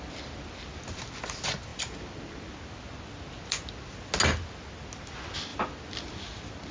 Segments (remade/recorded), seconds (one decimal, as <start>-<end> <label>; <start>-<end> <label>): 0.0-6.7 recorded